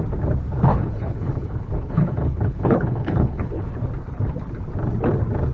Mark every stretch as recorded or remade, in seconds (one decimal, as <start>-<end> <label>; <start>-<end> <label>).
0.0-0.7 recorded; 0.7-3.7 remade; 3.7-5.5 recorded